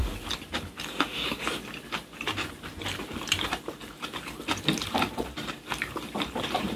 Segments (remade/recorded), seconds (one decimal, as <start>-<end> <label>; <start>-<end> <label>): 0.0-1.9 recorded; 1.9-6.8 remade